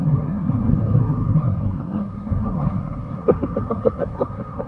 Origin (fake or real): fake